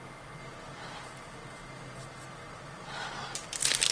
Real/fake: real